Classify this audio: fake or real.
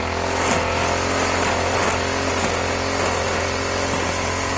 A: real